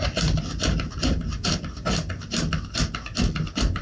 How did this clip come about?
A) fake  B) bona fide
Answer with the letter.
B